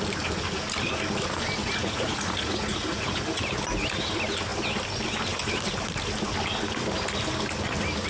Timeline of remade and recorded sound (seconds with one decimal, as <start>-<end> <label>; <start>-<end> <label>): 0.0-1.6 recorded; 1.6-3.4 remade; 3.4-8.1 recorded